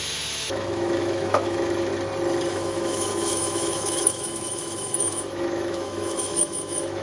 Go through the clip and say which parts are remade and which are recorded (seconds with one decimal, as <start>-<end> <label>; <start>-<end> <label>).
0.0-1.9 remade; 1.9-2.5 recorded; 2.5-7.0 remade